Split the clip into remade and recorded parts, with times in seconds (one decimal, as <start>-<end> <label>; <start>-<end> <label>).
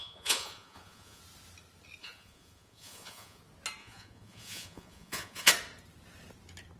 0.0-1.2 remade; 1.2-2.0 recorded; 2.0-3.4 remade; 3.4-3.8 recorded; 3.8-5.5 remade; 5.5-6.8 recorded